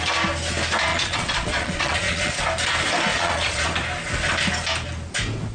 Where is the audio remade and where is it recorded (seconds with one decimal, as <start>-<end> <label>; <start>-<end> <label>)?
0.0-0.9 recorded; 0.9-2.4 remade; 2.4-3.1 recorded; 3.1-3.6 remade; 3.6-5.5 recorded